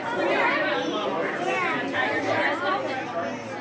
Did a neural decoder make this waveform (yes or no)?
no